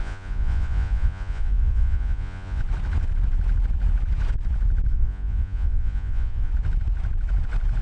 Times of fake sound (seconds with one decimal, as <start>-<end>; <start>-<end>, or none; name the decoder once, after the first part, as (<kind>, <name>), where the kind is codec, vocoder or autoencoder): 0.0-2.6 (vocoder, Vocos); 4.9-6.5